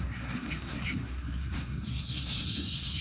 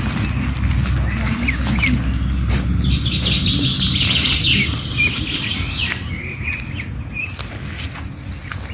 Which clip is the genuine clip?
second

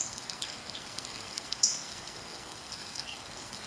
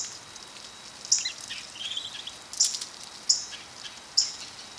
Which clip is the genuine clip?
second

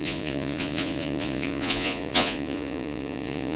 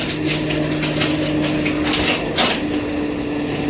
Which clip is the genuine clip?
second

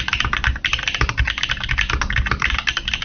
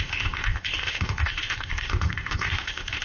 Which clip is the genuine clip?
first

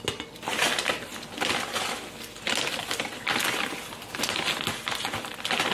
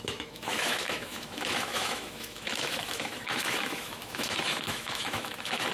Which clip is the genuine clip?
first